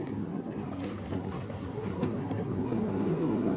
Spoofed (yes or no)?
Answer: yes